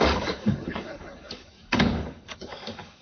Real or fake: fake